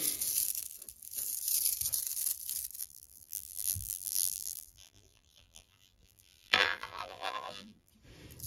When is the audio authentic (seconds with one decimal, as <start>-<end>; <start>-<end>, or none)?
0.0-2.8; 7.9-8.5